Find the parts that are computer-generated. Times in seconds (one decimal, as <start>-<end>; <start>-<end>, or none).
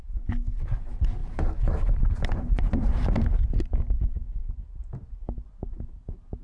1.2-3.9; 4.4-4.9